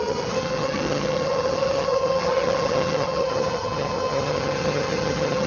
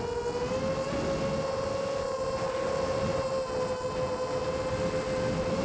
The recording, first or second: second